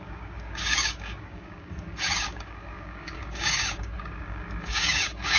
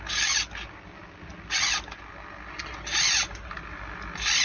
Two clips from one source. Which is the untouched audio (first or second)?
second